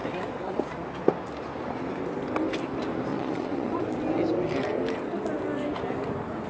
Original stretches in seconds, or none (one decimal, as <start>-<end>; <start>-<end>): 0.0-3.1; 3.8-6.5